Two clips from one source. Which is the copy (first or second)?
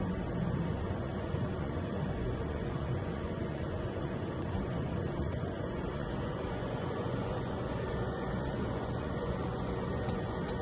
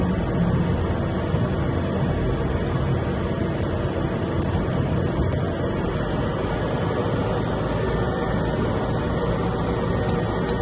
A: first